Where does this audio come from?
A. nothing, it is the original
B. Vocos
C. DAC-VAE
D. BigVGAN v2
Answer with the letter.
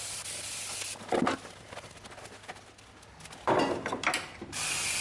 A